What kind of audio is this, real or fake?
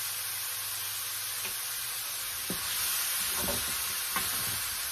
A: real